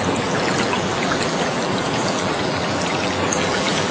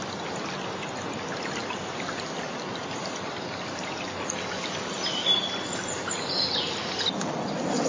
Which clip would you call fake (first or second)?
first